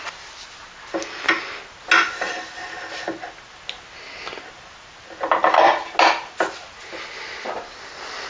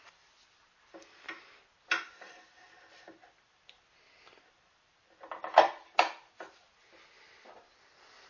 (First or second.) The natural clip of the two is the first